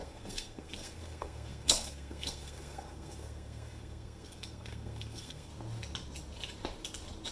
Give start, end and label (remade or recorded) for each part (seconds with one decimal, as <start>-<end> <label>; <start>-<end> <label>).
0.0-5.5 remade; 5.5-7.3 recorded